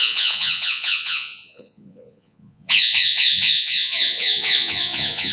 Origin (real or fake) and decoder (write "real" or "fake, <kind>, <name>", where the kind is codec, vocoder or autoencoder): fake, vocoder, Vocos